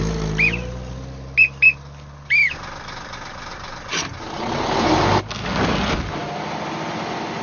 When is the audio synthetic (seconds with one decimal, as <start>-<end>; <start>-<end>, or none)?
3.5-5.0